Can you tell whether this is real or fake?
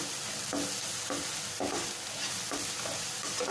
real